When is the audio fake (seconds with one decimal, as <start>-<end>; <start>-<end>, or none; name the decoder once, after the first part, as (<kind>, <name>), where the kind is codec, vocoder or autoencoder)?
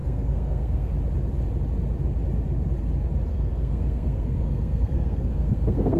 0.0-0.9 (codec, SNAC); 3.3-6.0